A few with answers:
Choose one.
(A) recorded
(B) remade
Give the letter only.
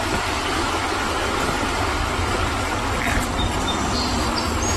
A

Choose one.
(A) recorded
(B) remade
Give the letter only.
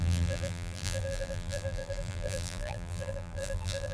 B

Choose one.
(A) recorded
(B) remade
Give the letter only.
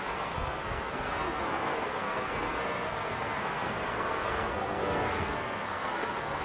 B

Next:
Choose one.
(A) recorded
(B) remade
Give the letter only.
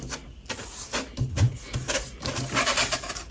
A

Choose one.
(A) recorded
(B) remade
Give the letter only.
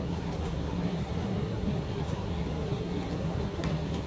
B